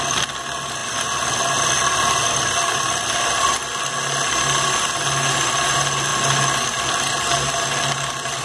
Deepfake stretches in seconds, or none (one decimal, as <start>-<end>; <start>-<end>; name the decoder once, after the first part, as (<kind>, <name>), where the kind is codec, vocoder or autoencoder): none